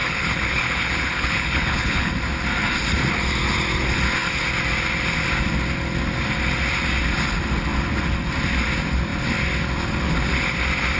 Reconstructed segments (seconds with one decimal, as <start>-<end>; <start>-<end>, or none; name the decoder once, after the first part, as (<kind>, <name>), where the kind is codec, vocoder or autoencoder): 0.0-2.1 (codec, HILCodec)